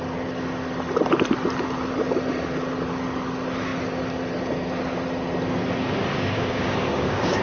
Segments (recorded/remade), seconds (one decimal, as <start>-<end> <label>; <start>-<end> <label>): 0.0-6.1 recorded; 6.1-7.4 remade